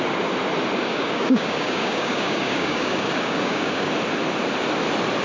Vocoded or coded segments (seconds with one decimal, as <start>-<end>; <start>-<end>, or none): 0.8-3.9